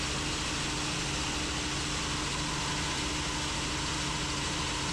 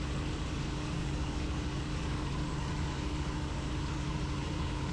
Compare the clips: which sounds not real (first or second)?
second